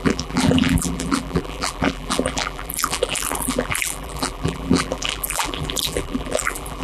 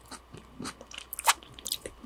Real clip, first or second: second